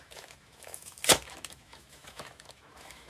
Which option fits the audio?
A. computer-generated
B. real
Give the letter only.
A